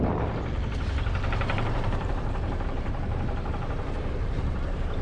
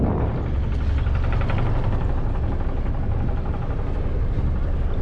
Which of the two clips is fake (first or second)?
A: first